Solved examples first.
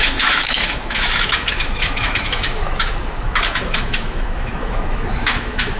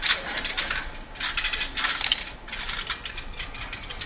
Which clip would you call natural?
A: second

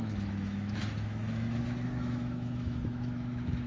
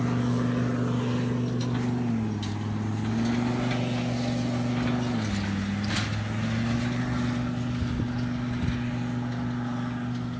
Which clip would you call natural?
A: second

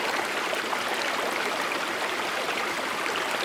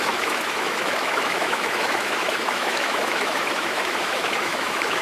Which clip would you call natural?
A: first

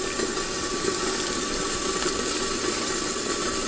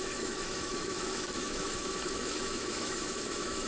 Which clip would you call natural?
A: first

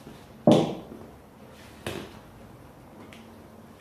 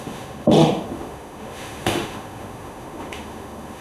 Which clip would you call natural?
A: first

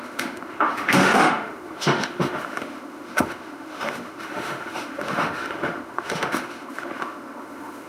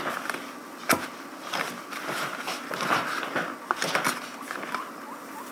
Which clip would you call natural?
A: second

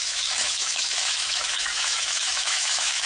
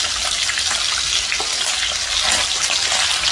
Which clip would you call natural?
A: second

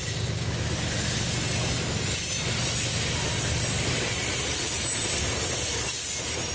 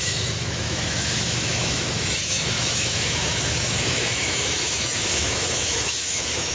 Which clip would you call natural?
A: first